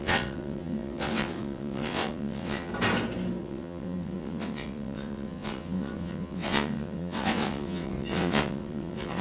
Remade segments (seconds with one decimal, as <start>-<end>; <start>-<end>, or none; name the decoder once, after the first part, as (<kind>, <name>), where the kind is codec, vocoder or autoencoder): 0.0-2.7 (vocoder, WaveNeXt); 3.4-9.2